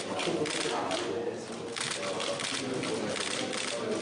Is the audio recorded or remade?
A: recorded